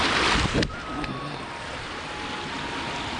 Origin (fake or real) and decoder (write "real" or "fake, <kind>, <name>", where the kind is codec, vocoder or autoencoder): real